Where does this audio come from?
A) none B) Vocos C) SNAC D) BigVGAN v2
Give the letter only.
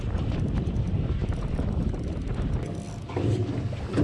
A